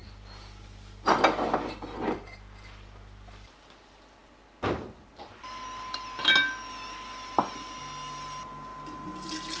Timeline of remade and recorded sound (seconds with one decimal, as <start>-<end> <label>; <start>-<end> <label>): 0.0-9.6 recorded